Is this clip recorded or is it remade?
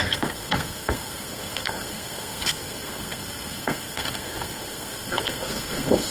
remade